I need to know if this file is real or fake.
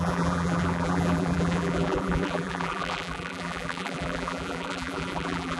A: fake